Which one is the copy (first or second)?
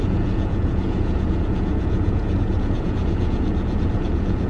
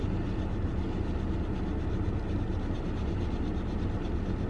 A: first